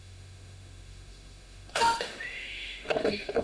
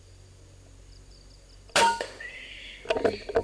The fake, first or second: first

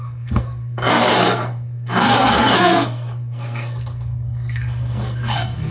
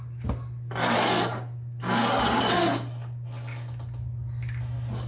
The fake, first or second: first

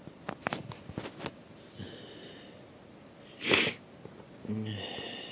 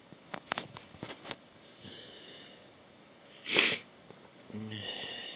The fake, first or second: second